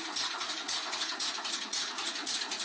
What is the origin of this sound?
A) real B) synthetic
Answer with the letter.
B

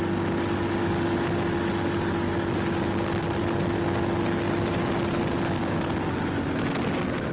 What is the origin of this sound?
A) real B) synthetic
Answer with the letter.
A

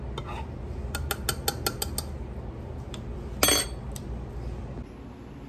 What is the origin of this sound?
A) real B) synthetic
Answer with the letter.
A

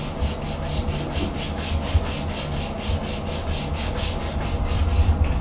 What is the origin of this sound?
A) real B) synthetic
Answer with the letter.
A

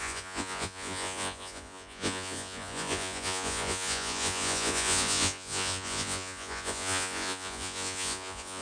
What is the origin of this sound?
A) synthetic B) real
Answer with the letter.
A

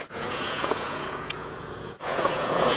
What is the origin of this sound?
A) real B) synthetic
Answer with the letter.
B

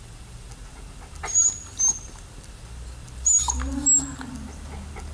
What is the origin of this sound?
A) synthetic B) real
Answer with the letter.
B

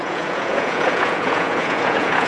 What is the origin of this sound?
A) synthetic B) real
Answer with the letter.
A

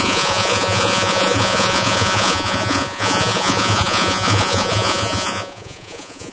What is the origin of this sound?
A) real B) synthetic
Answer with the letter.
B